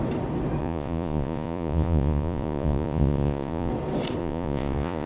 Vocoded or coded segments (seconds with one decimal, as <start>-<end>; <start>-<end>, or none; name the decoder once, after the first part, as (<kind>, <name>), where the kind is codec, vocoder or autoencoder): 0.6-3.7 (vocoder, Vocos); 4.2-5.1